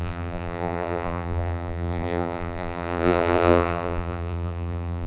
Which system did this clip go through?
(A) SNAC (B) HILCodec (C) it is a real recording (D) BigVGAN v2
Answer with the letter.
D